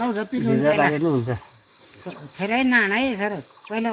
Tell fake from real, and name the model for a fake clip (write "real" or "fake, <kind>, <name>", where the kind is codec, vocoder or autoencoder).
fake, codec, DAC